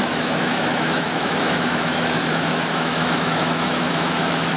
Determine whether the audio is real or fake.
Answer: fake